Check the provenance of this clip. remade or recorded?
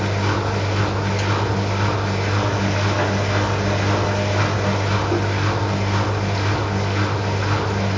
recorded